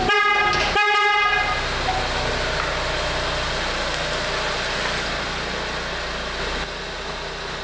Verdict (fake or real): real